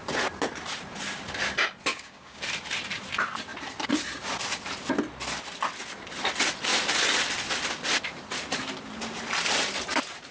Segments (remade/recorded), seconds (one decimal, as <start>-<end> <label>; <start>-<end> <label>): 0.0-1.9 recorded; 1.9-2.4 remade; 2.4-10.3 recorded